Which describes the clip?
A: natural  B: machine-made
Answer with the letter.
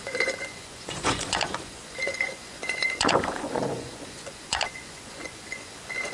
B